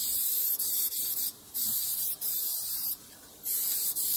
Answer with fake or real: fake